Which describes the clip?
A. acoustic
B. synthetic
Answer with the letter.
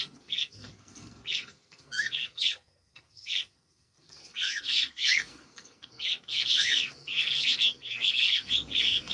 B